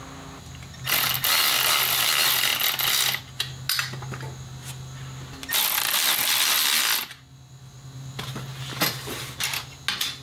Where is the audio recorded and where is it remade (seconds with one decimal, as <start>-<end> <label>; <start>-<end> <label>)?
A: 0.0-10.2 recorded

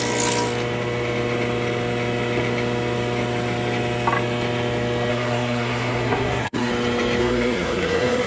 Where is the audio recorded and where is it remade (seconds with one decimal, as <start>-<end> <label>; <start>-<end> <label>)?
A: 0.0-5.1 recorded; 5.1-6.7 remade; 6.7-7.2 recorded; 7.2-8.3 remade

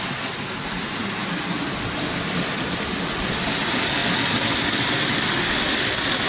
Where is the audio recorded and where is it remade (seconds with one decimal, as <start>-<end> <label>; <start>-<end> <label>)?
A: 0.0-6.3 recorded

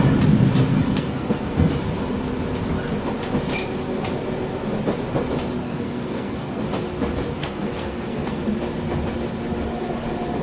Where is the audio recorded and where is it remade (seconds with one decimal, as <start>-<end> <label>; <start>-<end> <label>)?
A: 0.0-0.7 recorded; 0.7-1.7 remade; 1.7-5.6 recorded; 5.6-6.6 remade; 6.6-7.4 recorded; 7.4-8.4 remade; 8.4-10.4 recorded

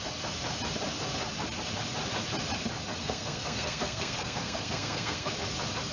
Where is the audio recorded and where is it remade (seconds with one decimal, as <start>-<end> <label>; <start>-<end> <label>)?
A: 0.0-3.0 recorded; 3.0-5.3 remade; 5.3-5.9 recorded

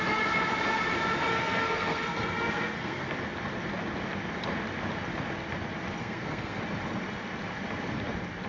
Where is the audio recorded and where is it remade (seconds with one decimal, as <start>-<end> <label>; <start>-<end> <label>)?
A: 0.0-1.3 recorded; 1.3-3.1 remade; 3.1-6.0 recorded; 6.0-6.6 remade; 6.6-8.5 recorded